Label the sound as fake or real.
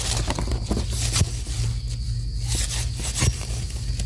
real